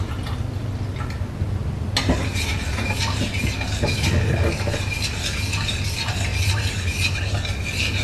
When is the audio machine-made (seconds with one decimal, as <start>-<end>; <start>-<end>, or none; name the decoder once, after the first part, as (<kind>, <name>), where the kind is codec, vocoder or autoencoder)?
none